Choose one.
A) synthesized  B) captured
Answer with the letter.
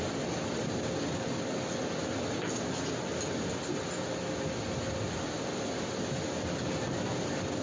B